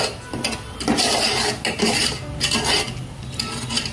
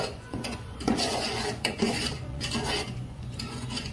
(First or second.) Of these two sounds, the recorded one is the first